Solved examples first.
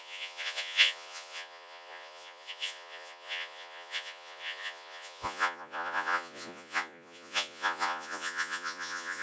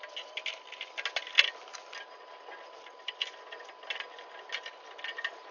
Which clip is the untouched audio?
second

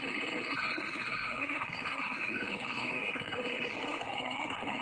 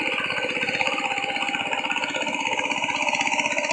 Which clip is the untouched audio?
second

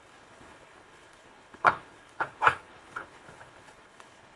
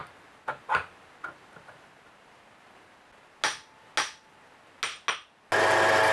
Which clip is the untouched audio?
second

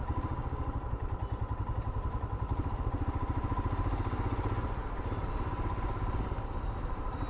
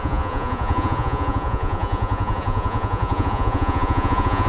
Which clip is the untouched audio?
first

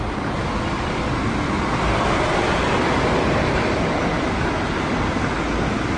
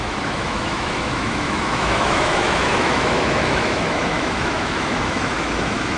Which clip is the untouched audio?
first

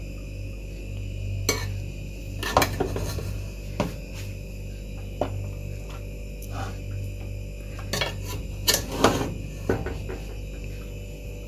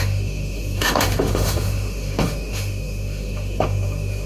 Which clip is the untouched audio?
first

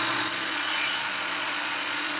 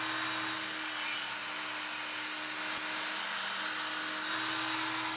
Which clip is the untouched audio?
second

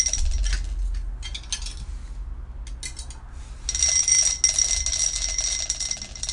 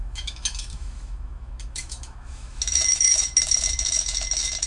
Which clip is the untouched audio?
first